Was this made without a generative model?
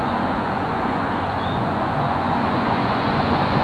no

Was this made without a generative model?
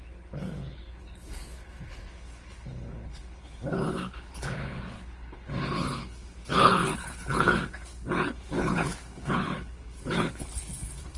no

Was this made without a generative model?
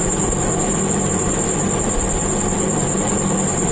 no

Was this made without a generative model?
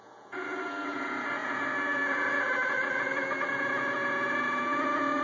no